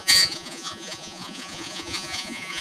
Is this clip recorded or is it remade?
remade